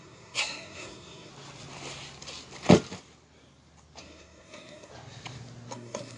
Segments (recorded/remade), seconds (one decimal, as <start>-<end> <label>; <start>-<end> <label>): 0.0-1.3 remade; 1.3-4.0 recorded; 4.0-4.9 remade; 4.9-5.7 recorded; 5.7-6.2 remade